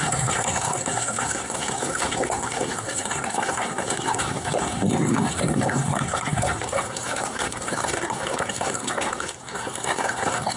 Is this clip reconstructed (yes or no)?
yes